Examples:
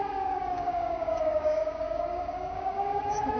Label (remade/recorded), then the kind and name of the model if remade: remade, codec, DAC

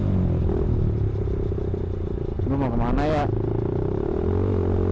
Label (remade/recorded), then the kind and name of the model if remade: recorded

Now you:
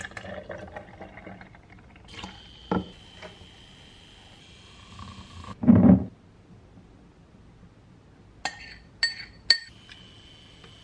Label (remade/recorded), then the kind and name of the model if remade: recorded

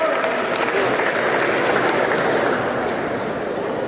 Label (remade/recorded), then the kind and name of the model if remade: recorded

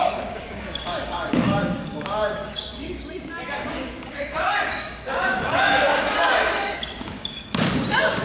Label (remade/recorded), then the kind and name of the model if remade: remade, codec, DAC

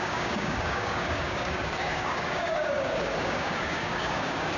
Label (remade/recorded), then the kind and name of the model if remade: remade, codec, DAC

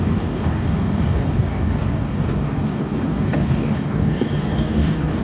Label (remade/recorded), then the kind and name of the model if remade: remade, codec, DAC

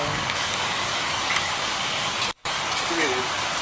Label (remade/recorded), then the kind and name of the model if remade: remade, codec, DAC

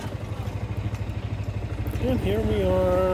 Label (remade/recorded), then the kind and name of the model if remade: recorded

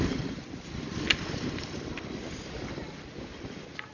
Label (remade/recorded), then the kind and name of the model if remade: recorded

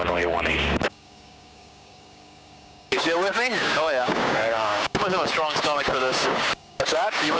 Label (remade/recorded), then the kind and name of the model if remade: remade, codec, DAC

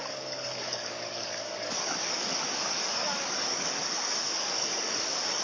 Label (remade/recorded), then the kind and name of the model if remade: remade, codec, DAC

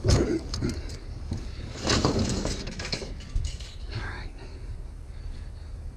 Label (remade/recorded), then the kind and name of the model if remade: remade, codec, DAC